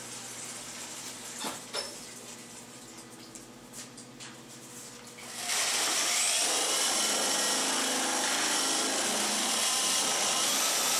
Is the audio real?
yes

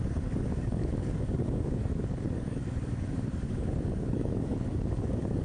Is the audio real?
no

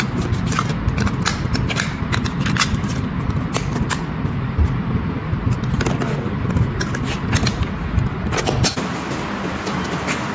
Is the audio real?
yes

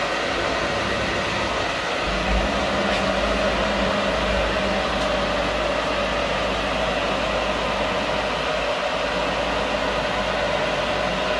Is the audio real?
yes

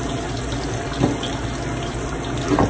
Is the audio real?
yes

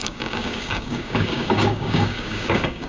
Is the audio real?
no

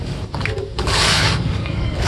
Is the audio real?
no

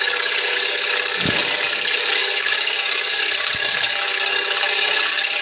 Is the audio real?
no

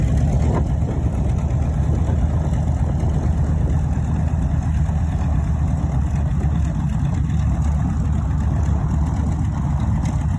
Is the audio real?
yes